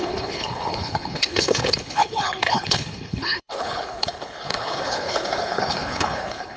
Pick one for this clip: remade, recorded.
remade